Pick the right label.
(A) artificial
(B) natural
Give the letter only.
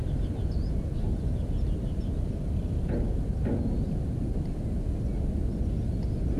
B